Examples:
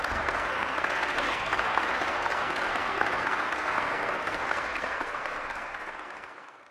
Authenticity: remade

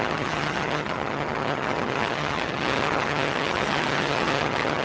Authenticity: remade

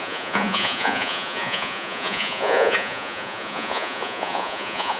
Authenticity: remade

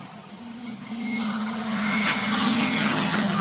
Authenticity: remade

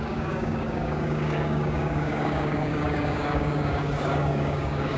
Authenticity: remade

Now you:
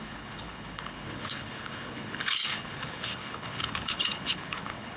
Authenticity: remade